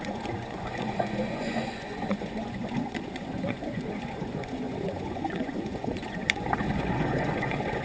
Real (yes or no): no